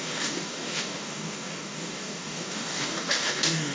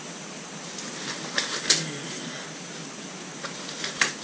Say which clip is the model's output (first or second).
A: first